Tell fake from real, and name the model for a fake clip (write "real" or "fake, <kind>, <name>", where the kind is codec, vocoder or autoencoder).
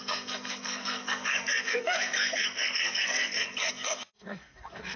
fake, codec, SNAC